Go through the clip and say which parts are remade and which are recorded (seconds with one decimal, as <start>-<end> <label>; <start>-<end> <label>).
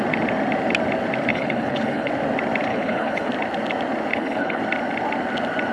0.0-1.3 recorded; 1.3-2.1 remade; 2.1-2.7 recorded; 2.7-3.3 remade; 3.3-4.1 recorded; 4.1-4.6 remade; 4.6-5.7 recorded